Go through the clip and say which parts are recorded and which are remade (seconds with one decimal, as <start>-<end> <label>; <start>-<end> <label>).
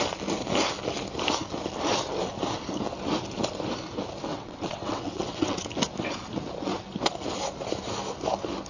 0.0-4.3 recorded; 4.3-5.7 remade; 5.7-8.7 recorded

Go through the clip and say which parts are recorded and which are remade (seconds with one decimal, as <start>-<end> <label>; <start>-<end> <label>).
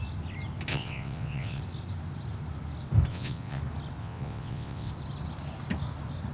0.0-0.7 recorded; 0.7-1.6 remade; 1.6-3.1 recorded; 3.1-3.6 remade; 3.6-4.0 recorded; 4.0-4.9 remade; 4.9-6.3 recorded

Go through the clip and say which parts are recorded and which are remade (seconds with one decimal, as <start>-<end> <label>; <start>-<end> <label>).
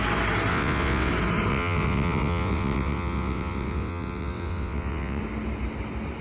0.0-0.5 recorded; 0.5-1.1 remade; 1.1-1.5 recorded; 1.5-5.2 remade; 5.2-6.2 recorded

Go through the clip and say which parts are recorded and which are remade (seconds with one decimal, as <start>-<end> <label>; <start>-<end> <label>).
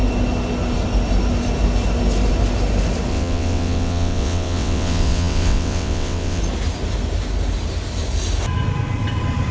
0.0-3.1 recorded; 3.1-6.4 remade; 6.4-9.5 recorded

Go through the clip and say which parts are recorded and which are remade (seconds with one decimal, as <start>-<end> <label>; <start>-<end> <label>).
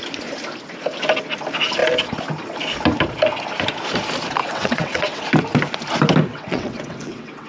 0.0-4.4 recorded; 4.4-5.2 remade; 5.2-6.3 recorded; 6.3-7.5 remade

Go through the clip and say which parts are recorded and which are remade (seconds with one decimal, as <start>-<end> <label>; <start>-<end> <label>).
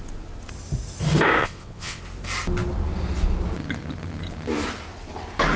0.0-1.4 recorded; 1.4-2.0 remade; 2.0-5.6 recorded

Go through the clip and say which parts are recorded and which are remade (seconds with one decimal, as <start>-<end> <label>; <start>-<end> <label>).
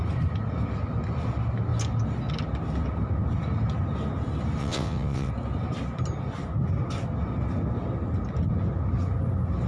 0.0-4.6 recorded; 4.6-5.3 remade; 5.3-9.7 recorded